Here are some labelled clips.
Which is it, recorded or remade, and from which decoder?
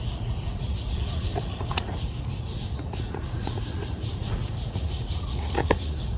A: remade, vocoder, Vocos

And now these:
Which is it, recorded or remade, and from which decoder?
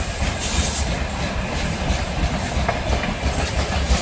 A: recorded